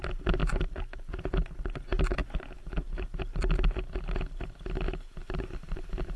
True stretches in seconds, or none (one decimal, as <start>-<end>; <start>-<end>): 0.0-0.4; 1.0-2.2; 3.2-5.2

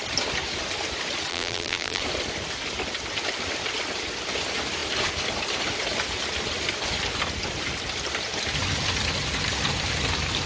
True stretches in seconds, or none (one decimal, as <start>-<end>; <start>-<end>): 0.0-1.3; 2.0-10.5